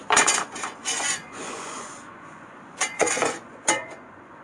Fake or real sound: fake